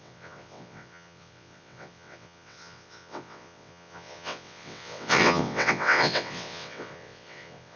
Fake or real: fake